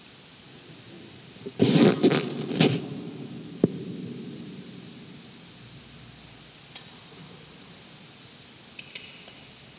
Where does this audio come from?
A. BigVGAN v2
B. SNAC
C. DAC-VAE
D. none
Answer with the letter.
D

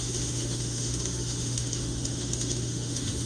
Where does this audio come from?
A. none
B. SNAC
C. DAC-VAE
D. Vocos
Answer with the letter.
C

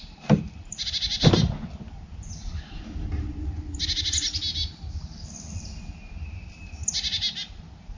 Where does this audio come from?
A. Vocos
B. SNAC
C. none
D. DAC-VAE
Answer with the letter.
C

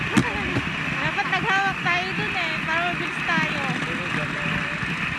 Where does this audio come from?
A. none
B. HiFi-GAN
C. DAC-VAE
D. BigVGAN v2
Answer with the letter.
A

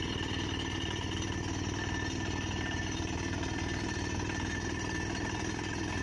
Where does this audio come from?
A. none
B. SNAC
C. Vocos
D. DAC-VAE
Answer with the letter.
A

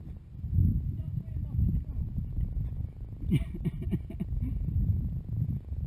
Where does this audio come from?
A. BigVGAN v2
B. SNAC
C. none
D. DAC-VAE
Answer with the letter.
C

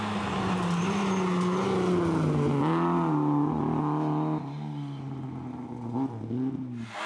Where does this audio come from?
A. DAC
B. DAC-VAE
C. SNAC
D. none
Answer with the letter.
D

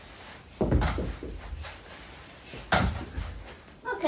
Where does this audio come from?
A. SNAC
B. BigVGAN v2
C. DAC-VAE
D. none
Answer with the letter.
D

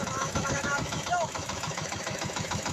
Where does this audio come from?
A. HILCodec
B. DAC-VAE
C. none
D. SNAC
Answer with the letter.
B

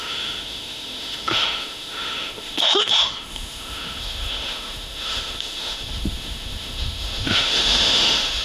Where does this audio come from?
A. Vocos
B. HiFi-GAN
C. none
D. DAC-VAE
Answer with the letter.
D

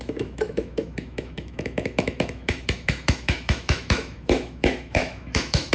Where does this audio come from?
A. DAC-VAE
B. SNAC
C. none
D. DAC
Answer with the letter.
A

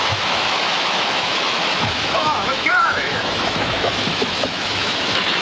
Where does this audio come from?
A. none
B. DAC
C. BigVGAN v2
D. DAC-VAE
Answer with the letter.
D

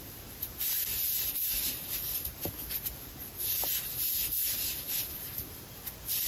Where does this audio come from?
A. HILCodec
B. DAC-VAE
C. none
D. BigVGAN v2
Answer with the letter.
C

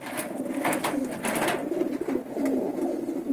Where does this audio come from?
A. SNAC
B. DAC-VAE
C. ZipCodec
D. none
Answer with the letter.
D